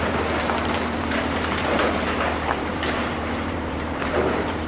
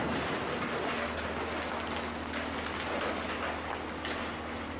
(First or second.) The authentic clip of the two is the second